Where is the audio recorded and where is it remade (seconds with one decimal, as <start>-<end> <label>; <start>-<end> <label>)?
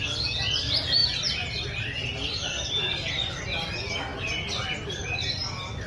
0.0-1.0 recorded; 1.0-3.4 remade; 3.4-5.9 recorded